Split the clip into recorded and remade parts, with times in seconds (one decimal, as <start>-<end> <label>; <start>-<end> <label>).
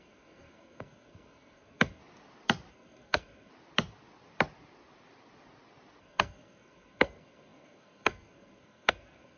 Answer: 0.0-2.0 remade; 2.0-2.7 recorded; 2.7-3.5 remade; 3.5-6.0 recorded; 6.0-9.4 remade